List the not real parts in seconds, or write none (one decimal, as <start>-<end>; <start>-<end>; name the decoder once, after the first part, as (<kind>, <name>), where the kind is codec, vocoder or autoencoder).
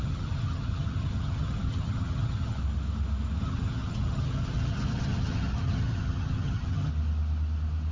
0.0-2.6 (vocoder, HiFi-GAN); 3.4-6.9